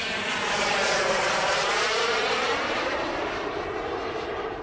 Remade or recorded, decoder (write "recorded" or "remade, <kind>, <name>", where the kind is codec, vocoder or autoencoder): remade, vocoder, BigVGAN v2